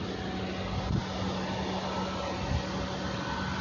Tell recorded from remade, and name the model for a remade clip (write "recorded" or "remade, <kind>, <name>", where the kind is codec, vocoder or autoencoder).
recorded